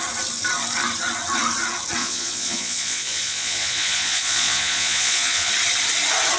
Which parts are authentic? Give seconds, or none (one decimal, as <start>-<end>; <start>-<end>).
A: 0.0-2.0; 5.5-6.4